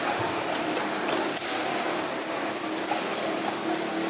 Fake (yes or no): no